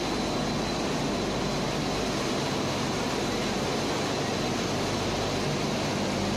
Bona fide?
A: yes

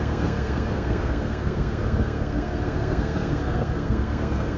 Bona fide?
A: no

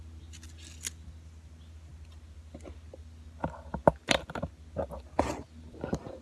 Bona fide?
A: yes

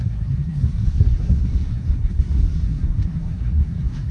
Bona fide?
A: no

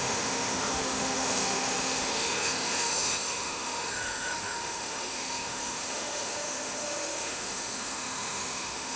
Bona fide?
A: no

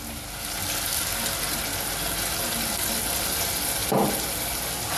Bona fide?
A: yes